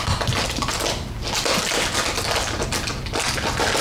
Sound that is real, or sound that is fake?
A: real